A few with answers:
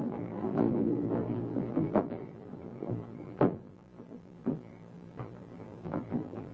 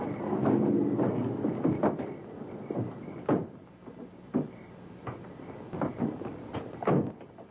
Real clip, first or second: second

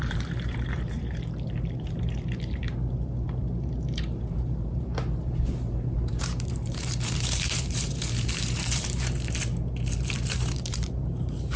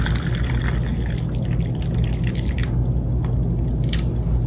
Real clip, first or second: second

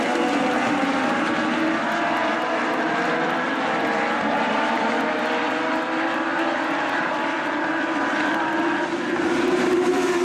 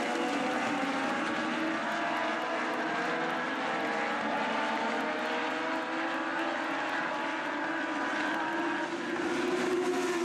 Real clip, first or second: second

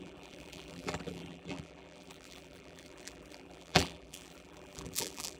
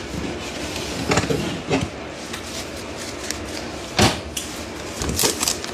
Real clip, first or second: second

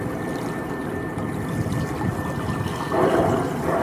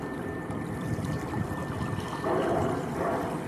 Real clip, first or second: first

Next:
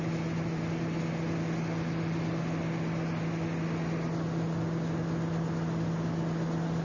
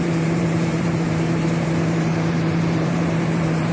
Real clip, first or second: first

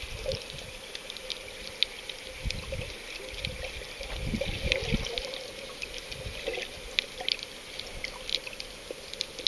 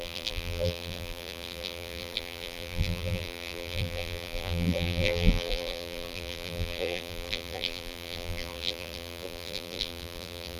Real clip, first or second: first